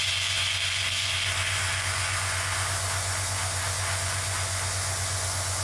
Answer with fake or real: fake